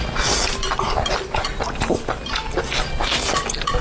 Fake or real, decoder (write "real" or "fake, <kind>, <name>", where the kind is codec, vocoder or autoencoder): real